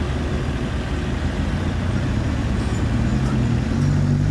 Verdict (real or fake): real